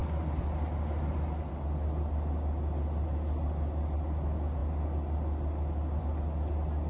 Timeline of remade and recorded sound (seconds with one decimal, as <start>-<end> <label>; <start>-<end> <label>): 0.0-6.9 recorded